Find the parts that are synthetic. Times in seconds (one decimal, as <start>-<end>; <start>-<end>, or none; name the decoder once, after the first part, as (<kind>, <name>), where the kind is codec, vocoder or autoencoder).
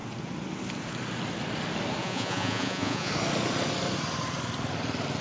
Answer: 2.0-3.1 (vocoder, Vocos)